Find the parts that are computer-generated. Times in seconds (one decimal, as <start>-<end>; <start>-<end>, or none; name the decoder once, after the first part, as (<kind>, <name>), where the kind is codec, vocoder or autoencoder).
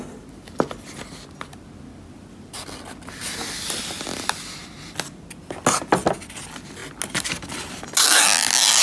none